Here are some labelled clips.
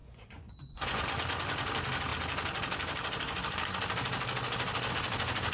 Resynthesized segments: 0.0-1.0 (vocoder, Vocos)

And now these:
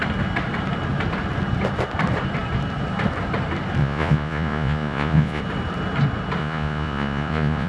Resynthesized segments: 3.8-5.4 (vocoder, Vocos); 6.4-7.7

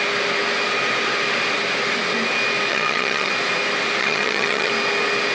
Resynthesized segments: 2.7-3.3 (vocoder, HiFi-GAN); 4.0-4.7

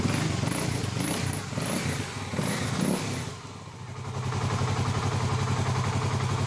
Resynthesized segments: none

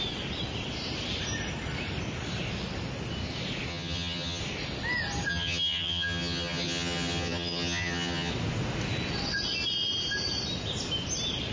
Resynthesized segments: 3.7-4.4 (vocoder, HiFi-GAN); 5.3-8.3

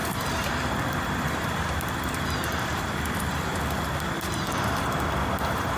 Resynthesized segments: 0.0-0.5 (vocoder, BigVGAN v2)